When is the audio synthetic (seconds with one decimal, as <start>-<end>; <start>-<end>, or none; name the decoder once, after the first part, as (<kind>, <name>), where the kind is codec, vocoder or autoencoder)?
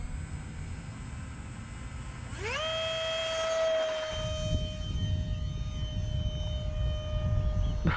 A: none